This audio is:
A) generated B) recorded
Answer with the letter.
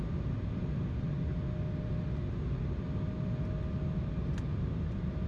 B